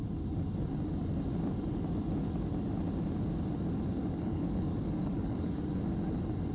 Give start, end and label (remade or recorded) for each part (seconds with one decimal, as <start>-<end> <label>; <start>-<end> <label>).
0.0-4.0 recorded; 4.0-5.6 remade; 5.6-6.5 recorded